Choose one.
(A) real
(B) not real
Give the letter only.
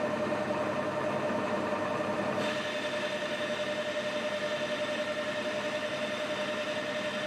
A